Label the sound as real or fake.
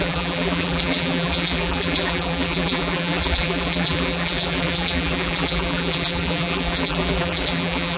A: fake